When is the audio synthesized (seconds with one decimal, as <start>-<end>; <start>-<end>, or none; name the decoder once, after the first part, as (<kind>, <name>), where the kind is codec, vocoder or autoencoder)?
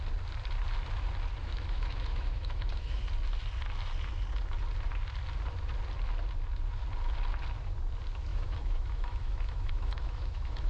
1.4-3.0 (autoencoder, DAC-VAE); 8.3-10.7